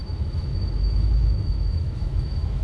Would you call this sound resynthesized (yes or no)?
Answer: yes